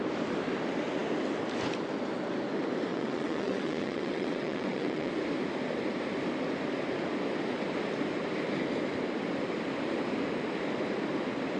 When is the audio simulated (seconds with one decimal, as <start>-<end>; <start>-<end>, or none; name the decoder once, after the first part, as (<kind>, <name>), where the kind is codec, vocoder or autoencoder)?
2.9-5.1 (vocoder, WaveNeXt)